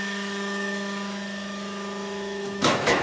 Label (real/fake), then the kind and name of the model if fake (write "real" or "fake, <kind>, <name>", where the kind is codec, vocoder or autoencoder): fake, autoencoder, DAC-VAE